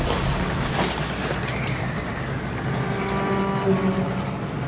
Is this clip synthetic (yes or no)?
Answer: no